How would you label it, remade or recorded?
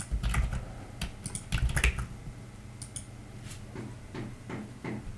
recorded